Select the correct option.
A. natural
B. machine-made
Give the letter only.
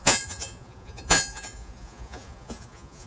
B